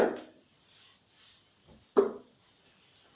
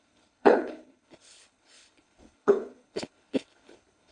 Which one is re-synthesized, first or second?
second